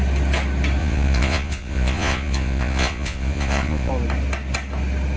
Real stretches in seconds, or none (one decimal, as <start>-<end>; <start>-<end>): 0.0-0.8; 3.9-5.2